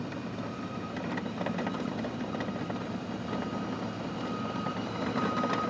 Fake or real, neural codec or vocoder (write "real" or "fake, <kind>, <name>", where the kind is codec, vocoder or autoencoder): real